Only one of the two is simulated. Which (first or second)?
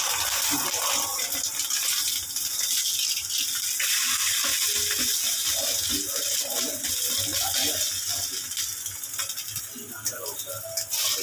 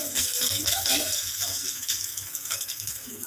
second